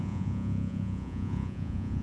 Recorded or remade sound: remade